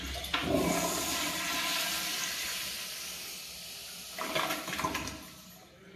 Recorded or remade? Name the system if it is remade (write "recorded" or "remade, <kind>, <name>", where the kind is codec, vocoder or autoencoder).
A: recorded